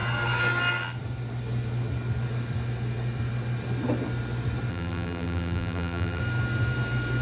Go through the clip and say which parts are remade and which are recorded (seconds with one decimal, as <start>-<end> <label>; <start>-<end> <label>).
0.0-4.7 recorded; 4.7-6.2 remade; 6.2-7.2 recorded